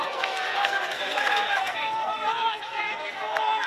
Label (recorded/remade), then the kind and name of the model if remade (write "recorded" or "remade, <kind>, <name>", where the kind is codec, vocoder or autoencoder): remade, codec, SNAC